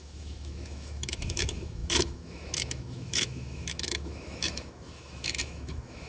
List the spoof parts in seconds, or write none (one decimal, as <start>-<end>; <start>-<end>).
0.0-6.1